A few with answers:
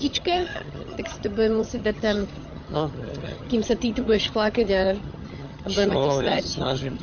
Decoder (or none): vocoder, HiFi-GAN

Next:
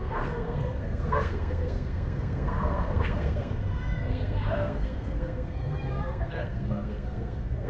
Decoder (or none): codec, SNAC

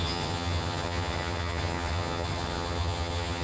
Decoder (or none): vocoder, HiFi-GAN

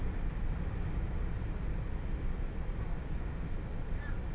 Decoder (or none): none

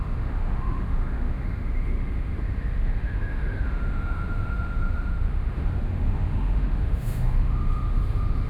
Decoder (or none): autoencoder, DAC-VAE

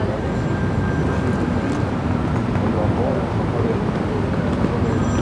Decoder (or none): none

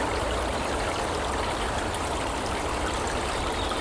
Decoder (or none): none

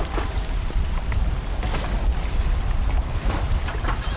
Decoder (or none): none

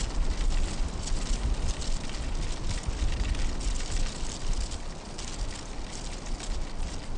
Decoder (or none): none